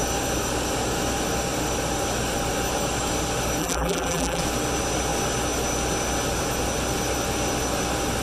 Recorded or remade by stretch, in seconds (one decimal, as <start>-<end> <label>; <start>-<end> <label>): 0.0-3.6 recorded; 3.6-4.4 remade; 4.4-8.2 recorded